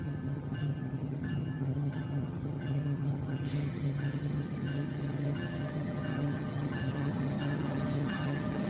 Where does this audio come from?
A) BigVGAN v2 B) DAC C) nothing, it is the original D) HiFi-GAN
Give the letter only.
D